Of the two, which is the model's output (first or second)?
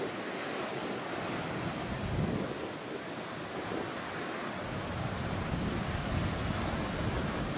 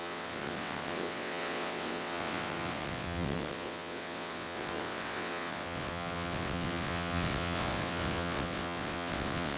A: second